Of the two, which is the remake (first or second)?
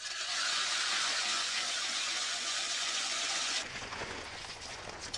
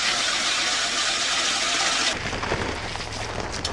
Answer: first